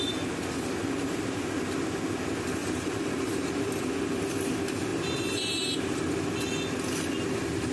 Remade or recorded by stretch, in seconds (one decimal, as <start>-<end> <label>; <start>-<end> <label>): 0.0-2.6 recorded; 2.6-3.8 remade; 3.8-4.9 recorded; 4.9-6.0 remade; 6.0-7.7 recorded